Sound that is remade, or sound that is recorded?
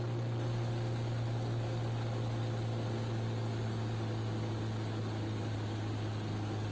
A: recorded